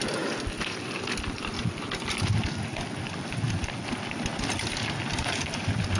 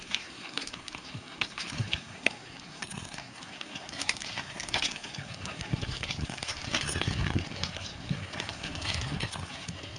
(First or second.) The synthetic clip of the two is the second